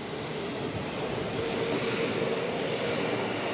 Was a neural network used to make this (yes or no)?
no